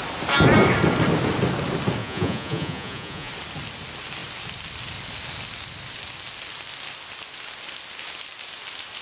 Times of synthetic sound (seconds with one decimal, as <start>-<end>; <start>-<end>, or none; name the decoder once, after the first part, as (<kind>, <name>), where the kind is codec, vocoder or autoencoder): 2.0-3.3 (vocoder, Vocos)